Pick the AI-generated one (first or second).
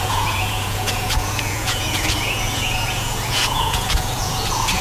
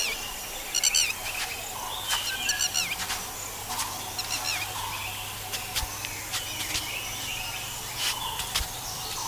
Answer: first